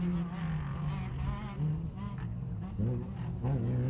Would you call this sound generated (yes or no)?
no